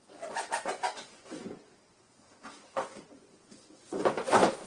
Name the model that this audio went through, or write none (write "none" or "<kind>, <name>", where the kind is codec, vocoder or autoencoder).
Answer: vocoder, Vocos